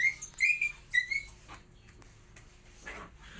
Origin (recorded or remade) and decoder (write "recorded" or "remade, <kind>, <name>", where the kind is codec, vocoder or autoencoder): recorded